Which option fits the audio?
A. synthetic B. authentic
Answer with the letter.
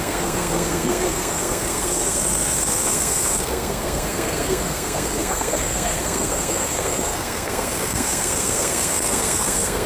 A